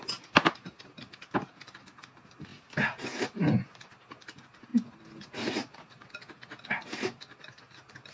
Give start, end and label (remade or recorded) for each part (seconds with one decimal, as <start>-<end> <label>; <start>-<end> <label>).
0.0-8.1 recorded